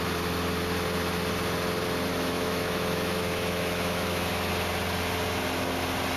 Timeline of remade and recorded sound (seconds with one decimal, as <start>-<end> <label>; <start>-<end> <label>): 0.0-2.1 recorded; 2.1-4.5 remade; 4.5-6.2 recorded